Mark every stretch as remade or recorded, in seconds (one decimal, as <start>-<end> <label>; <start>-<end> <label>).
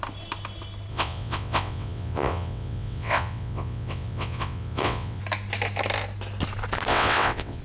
0.0-0.9 recorded; 0.9-5.2 remade; 5.2-6.9 recorded; 6.9-7.6 remade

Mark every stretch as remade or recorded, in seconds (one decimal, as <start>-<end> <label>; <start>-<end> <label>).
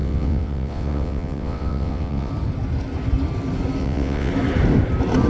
0.0-2.3 remade; 2.3-3.8 recorded; 3.8-4.3 remade; 4.3-5.3 recorded